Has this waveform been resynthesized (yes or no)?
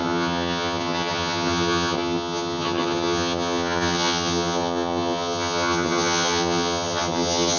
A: yes